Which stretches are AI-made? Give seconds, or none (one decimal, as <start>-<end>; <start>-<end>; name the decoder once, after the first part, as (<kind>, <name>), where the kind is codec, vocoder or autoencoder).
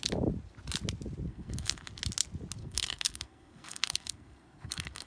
1.3-1.9 (codec, SNAC); 2.6-5.1